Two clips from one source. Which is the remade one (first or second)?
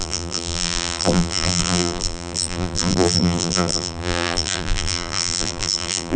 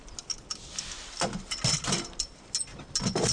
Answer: first